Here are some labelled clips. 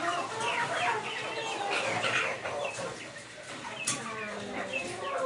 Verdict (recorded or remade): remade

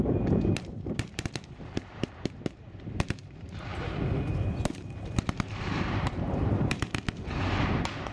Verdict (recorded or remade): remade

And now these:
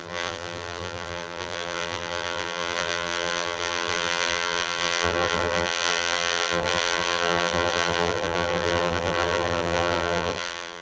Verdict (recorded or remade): remade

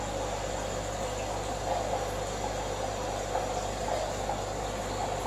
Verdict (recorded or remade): recorded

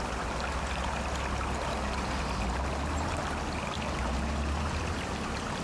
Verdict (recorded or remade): recorded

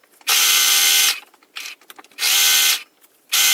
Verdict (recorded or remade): recorded